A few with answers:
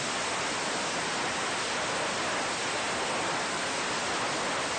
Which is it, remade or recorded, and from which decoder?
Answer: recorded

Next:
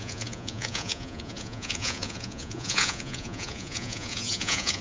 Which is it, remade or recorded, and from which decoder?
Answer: remade, vocoder, Vocos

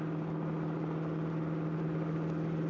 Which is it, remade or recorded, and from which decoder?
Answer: recorded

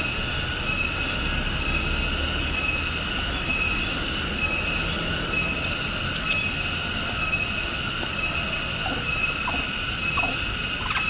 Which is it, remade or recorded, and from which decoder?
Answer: recorded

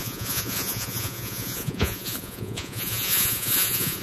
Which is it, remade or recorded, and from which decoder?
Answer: remade, vocoder, Vocos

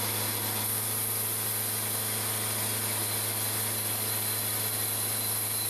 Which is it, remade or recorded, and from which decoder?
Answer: recorded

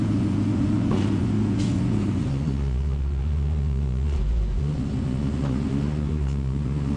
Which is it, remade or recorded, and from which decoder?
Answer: remade, vocoder, Vocos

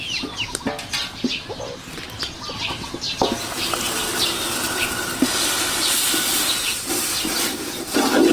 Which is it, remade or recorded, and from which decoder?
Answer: recorded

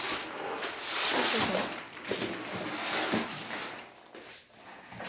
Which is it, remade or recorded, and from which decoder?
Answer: recorded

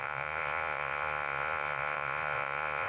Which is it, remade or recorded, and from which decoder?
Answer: remade, vocoder, Vocos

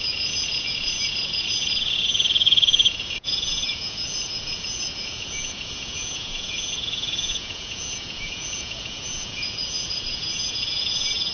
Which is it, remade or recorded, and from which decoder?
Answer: remade, vocoder, Vocos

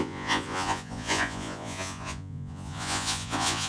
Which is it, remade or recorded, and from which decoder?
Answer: remade, vocoder, Vocos